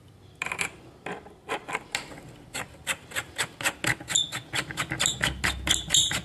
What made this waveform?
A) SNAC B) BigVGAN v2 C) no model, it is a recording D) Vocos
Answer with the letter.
C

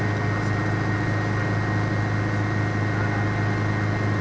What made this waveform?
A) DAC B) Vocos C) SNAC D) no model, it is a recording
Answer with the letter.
D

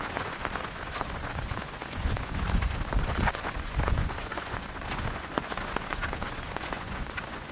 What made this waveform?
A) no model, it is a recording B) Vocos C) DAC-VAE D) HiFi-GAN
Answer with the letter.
B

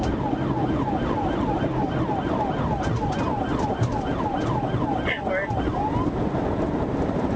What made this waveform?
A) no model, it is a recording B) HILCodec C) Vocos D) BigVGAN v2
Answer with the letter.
A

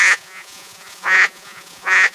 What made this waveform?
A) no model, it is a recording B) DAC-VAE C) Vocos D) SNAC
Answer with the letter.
C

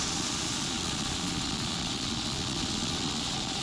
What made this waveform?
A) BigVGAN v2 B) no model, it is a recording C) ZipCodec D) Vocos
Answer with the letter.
D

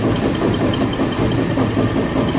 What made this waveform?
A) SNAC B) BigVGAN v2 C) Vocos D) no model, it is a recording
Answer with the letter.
D